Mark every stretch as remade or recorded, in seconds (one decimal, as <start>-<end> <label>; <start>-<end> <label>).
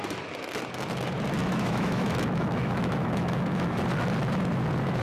0.0-1.4 recorded; 1.4-3.8 remade; 3.8-5.0 recorded